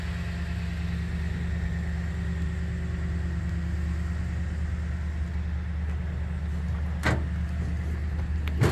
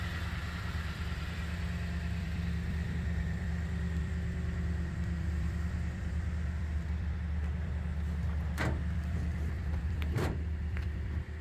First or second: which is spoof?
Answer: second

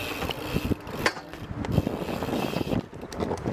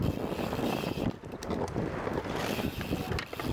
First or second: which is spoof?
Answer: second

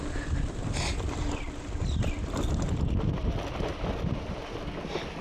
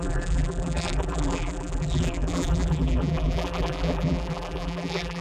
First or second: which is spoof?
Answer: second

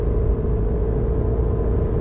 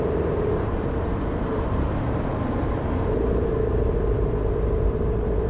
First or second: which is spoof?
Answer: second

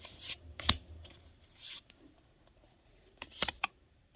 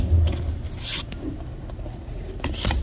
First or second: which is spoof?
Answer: first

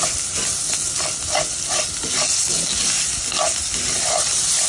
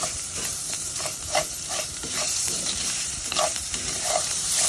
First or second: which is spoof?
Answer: second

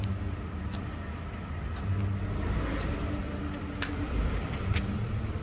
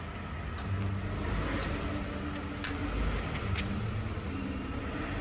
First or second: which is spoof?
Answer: first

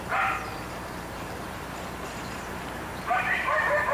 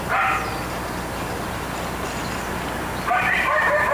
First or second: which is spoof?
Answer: first